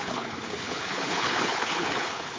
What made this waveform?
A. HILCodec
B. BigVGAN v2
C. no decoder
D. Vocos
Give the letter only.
A